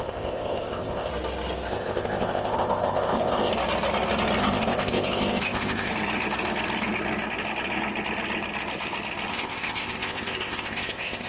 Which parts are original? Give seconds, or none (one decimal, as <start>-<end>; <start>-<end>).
1.1-1.7; 3.5-4.4; 5.9-9.3